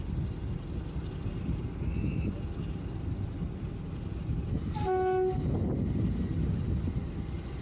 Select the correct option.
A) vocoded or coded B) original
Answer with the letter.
B